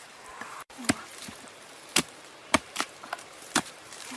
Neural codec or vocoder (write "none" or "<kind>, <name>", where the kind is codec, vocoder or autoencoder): vocoder, BigVGAN v2